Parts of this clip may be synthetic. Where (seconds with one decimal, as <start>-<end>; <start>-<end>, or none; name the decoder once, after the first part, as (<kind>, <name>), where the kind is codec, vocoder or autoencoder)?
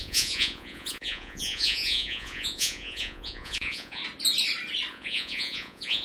0.0-4.0 (vocoder, Vocos); 4.9-6.0